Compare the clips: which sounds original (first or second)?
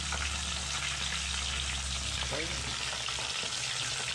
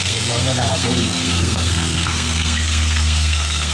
first